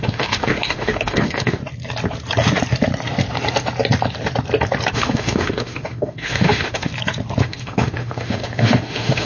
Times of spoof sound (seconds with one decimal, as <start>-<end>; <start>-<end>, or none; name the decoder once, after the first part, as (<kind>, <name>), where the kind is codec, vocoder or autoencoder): 0.0-1.6 (autoencoder, DAC-VAE); 4.9-6.9; 7.4-9.3